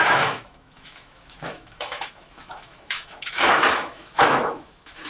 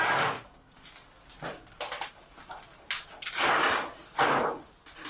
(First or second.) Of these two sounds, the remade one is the first